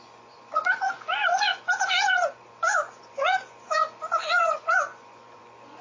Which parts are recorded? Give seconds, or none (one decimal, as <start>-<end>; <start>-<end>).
none